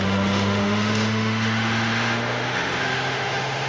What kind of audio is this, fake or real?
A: fake